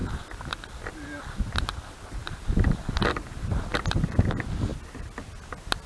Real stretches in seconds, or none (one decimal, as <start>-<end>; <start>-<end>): 0.0-5.9